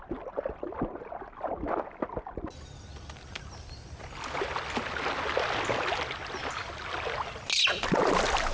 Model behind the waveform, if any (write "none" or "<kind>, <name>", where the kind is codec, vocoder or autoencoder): none